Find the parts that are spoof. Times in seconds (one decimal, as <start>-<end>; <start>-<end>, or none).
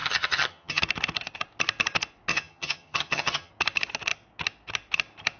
0.0-0.8; 2.3-3.5